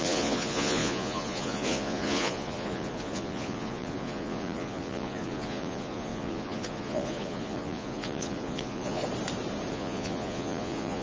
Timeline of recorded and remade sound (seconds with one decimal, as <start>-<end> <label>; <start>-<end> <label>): 0.0-9.0 remade; 9.0-9.7 recorded; 9.7-11.0 remade